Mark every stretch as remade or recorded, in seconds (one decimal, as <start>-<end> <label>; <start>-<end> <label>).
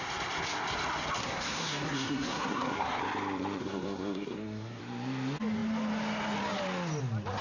0.0-1.2 recorded; 1.2-3.0 remade; 3.0-3.6 recorded; 3.6-4.8 remade; 4.8-7.4 recorded